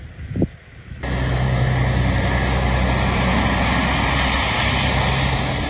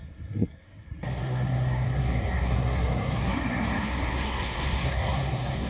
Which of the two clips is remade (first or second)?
second